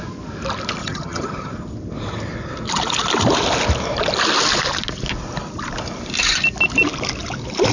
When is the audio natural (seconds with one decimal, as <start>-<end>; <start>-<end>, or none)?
0.0-0.8; 1.5-7.7